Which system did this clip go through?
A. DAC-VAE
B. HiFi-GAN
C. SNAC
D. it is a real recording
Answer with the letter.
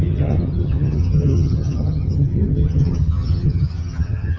B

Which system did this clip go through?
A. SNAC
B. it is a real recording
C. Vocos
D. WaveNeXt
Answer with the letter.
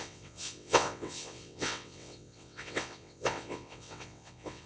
D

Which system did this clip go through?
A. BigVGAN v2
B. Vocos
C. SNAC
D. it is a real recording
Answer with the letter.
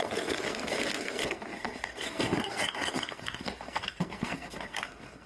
C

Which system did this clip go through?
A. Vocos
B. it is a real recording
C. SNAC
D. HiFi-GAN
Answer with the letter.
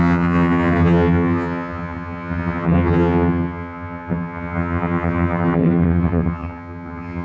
D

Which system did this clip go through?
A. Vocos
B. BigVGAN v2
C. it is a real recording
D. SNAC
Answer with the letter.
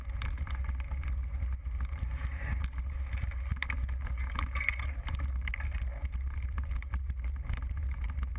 C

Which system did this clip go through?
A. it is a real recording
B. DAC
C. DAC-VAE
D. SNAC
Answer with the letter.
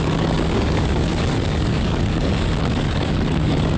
B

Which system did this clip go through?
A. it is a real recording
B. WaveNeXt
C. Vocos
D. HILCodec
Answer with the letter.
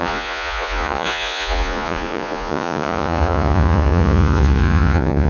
C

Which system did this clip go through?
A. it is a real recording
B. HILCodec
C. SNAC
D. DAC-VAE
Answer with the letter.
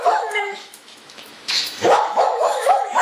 D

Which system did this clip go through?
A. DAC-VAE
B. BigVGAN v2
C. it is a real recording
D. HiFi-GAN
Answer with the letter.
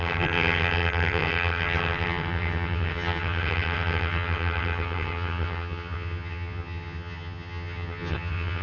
D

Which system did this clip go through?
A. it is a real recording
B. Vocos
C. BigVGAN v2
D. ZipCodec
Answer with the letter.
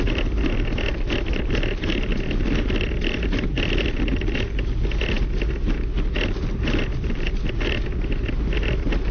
A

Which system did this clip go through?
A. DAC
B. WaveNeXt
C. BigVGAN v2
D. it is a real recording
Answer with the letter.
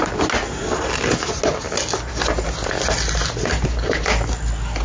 D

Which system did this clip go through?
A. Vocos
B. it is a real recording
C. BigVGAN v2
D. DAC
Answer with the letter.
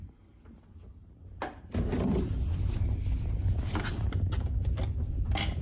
C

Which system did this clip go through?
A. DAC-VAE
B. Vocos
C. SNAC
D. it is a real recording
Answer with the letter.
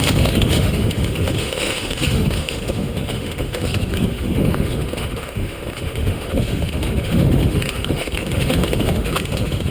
A